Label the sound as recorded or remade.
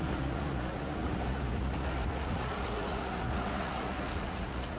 remade